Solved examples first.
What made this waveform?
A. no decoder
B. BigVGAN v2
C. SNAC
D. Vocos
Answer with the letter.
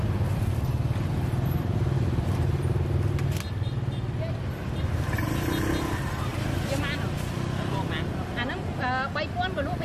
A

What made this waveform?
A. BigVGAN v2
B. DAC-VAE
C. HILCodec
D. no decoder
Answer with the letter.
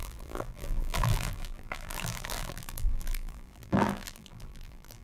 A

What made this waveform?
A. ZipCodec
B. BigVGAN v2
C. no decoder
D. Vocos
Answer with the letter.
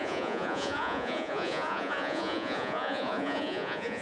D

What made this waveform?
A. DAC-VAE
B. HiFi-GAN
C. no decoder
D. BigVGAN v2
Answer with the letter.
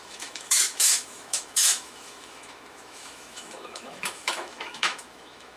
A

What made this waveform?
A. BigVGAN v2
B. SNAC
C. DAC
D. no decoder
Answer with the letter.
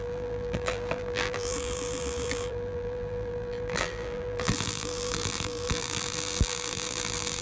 A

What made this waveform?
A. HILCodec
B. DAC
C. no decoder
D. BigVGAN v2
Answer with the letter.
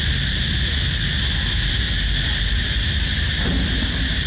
C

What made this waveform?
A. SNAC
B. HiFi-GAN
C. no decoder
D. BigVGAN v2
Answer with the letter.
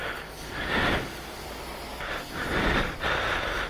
C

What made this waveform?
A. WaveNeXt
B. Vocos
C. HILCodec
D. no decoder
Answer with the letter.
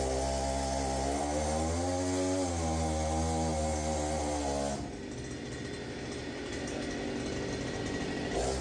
D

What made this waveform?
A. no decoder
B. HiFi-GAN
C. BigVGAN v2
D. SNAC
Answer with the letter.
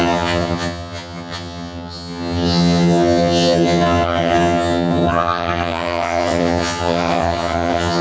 B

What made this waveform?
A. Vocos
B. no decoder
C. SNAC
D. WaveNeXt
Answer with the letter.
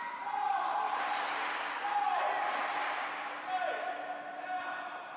B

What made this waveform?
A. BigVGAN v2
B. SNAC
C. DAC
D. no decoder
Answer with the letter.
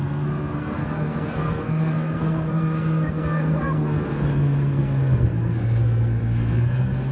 B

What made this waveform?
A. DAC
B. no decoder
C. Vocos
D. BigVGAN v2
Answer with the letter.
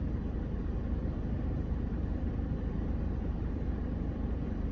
D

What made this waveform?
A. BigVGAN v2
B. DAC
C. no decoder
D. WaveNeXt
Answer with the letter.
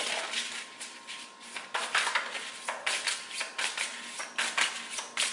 C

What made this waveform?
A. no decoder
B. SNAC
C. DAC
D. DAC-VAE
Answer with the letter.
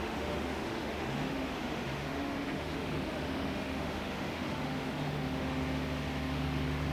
D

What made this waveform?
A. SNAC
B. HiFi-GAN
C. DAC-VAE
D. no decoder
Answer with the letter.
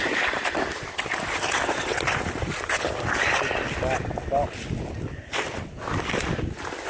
D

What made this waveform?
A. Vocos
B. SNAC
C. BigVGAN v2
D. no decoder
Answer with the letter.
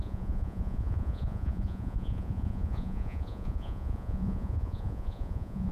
A